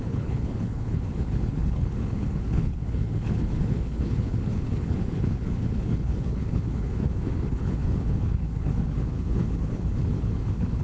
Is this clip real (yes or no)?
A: no